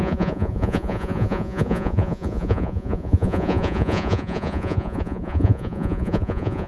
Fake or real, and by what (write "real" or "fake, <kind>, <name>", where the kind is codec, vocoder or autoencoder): fake, vocoder, Vocos